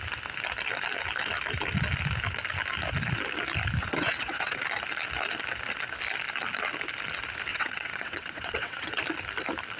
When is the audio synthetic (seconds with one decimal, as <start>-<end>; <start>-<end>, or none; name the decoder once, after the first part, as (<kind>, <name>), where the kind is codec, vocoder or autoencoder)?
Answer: 3.8-4.6 (vocoder, WaveNeXt); 7.5-9.0